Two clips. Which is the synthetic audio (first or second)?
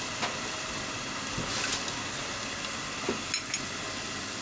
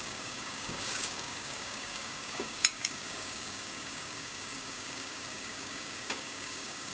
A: second